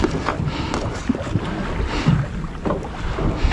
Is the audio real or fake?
real